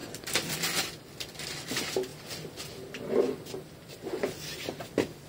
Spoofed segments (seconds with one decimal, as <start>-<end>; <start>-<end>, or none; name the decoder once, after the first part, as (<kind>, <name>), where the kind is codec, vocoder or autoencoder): none